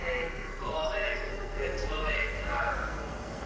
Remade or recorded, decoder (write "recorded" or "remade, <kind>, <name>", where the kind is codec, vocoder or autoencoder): remade, codec, SNAC